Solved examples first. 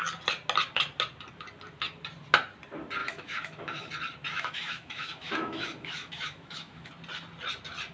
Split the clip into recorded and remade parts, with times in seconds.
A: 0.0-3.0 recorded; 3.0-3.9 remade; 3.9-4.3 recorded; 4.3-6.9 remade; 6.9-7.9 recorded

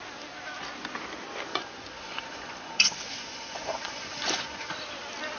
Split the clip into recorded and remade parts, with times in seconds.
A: 0.0-1.5 recorded; 1.5-4.7 remade; 4.7-5.4 recorded

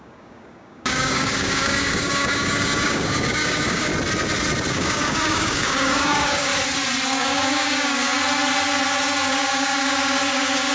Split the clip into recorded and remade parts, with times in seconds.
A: 0.0-3.9 remade; 3.9-4.7 recorded; 4.7-6.5 remade; 6.5-7.1 recorded; 7.1-8.2 remade; 8.2-9.3 recorded; 9.3-10.7 remade